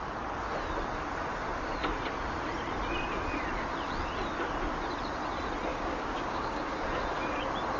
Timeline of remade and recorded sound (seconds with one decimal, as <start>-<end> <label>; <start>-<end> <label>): 0.0-5.7 recorded; 5.7-6.7 remade; 6.7-7.8 recorded